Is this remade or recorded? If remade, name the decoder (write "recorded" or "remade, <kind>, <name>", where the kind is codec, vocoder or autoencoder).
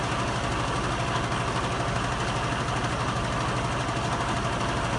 recorded